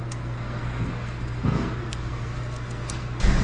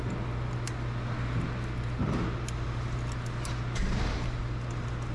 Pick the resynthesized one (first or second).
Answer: first